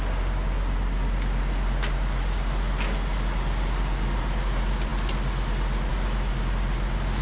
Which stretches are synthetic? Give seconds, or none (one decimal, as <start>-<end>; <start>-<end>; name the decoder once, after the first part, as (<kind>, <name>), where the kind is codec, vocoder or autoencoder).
none